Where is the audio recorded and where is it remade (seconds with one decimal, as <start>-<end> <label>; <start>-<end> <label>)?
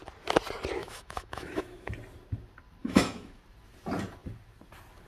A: 0.0-0.8 recorded; 0.8-1.9 remade; 1.9-2.8 recorded; 2.8-3.4 remade; 3.4-5.1 recorded